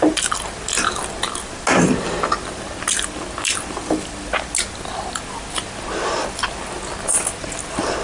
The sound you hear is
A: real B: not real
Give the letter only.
A